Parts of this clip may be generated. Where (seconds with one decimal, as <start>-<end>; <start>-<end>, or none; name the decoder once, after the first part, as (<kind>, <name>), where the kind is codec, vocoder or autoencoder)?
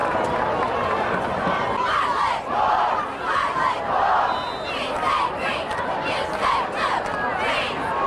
0.0-3.8 (vocoder, BigVGAN v2)